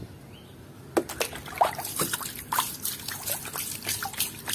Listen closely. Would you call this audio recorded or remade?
recorded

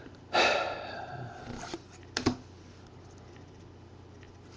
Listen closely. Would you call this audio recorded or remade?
recorded